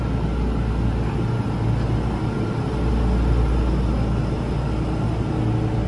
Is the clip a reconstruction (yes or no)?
no